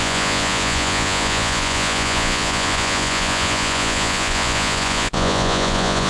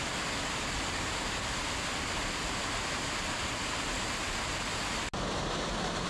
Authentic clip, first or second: second